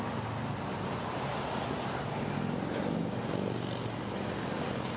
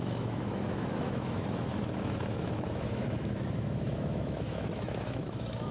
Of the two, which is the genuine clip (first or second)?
first